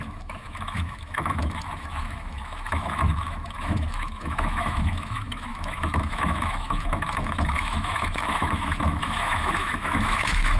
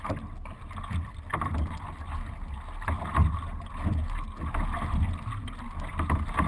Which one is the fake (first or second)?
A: first